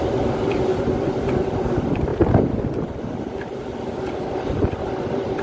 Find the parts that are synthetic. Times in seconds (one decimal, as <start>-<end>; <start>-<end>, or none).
0.0-0.7; 1.5-5.4